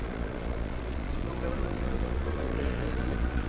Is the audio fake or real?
fake